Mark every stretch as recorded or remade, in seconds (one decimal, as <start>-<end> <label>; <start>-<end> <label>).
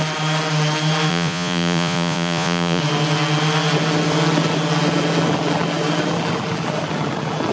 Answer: 0.0-1.1 recorded; 1.1-2.8 remade; 2.8-7.5 recorded